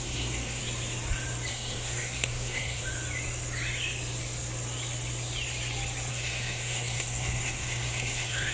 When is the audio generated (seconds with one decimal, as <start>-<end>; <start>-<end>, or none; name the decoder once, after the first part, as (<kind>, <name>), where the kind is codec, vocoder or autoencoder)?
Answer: 0.0-0.6 (codec, SNAC); 1.5-2.8; 6.1-8.5